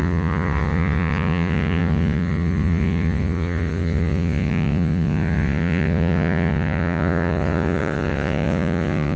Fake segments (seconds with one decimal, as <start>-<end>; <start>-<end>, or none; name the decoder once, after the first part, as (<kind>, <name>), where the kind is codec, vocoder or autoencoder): 0.0-9.2 (vocoder, Vocos)